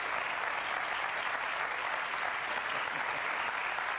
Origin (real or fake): real